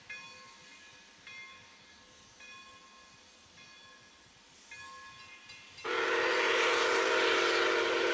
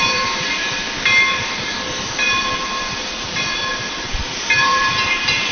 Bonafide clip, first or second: first